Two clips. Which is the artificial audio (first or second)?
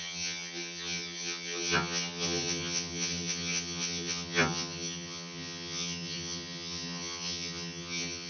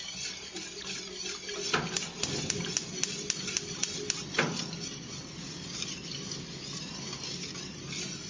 first